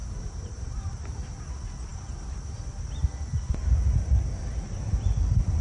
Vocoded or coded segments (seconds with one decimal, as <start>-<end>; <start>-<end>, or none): 0.0-1.4